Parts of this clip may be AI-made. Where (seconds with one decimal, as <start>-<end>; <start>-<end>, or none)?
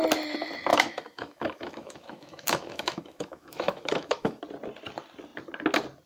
0.7-4.4